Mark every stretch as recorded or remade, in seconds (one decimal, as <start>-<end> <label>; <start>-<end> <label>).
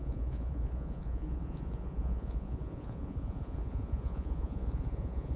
0.0-5.4 remade